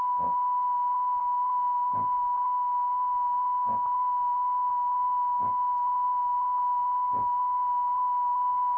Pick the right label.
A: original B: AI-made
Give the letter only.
A